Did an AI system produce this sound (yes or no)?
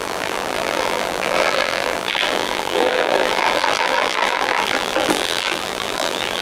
yes